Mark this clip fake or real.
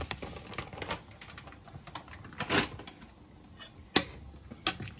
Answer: real